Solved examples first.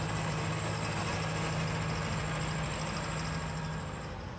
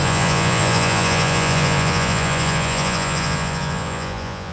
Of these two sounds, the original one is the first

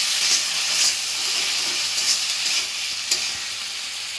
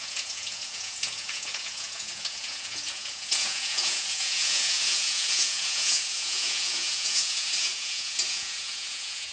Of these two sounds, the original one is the first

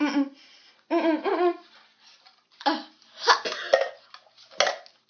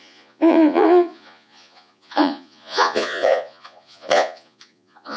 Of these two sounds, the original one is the first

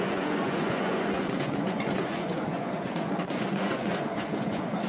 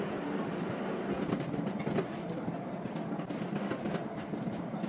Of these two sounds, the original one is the second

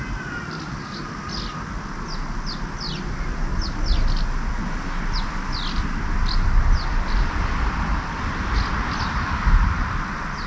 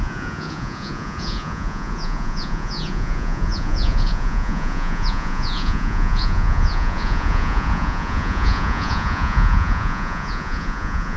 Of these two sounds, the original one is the first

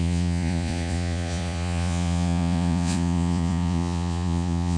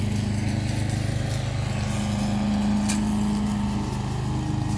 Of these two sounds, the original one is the second